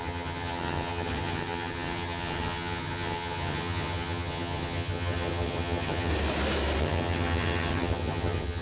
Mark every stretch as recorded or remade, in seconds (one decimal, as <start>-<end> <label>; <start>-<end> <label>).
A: 0.0-6.1 remade; 6.1-6.8 recorded; 6.8-8.6 remade